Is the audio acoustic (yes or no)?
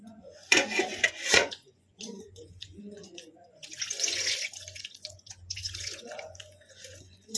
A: no